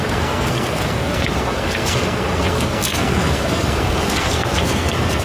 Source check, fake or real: fake